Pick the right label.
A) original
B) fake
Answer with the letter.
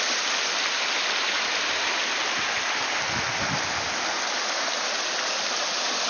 A